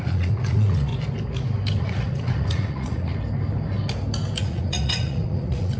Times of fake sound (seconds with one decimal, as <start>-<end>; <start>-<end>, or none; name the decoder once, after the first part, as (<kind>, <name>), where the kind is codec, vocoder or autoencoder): 0.0-0.9 (vocoder, Vocos); 1.8-3.1; 4.4-5.8